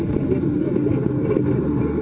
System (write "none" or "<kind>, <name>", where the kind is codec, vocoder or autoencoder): none